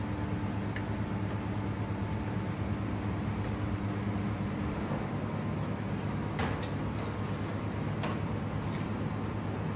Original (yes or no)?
yes